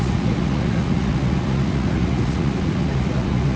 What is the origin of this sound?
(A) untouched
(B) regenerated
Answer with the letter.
B